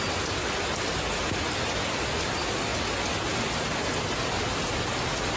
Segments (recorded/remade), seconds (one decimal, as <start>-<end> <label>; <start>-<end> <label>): 0.0-5.4 recorded